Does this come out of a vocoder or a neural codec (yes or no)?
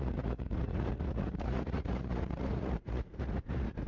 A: yes